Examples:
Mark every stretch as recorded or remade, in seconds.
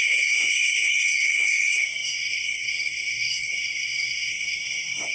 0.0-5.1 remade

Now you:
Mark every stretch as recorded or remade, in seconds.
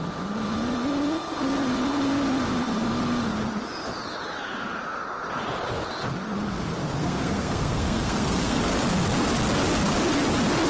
0.0-7.0 recorded; 7.0-8.6 remade; 8.6-10.7 recorded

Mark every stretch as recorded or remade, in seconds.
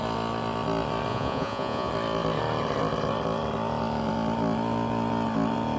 0.0-1.1 recorded; 1.1-1.9 remade; 1.9-5.8 recorded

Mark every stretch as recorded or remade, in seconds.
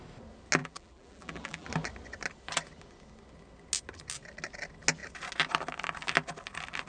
0.0-0.6 recorded; 0.6-1.7 remade; 1.7-6.9 recorded